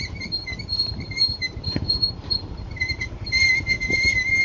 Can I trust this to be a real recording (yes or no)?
no